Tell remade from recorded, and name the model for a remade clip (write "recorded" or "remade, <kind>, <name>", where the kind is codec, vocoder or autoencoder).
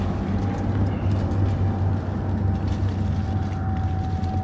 recorded